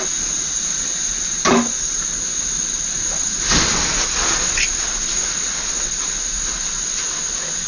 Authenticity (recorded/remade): recorded